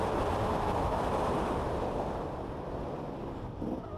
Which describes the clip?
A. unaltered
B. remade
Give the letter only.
A